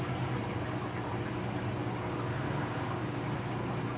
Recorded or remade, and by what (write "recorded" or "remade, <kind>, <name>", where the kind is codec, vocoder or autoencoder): recorded